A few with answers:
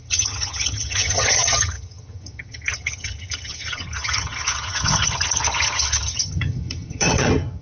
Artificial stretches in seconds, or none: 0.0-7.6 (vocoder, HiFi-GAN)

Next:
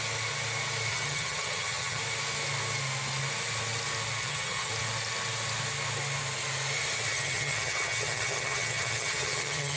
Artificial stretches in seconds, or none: 0.9-2.0 (vocoder, HiFi-GAN); 4.2-4.7; 7.1-9.8

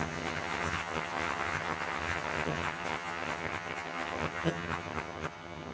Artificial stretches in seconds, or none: 0.0-5.7 (vocoder, HiFi-GAN)